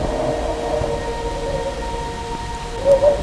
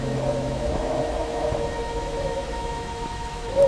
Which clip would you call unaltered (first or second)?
first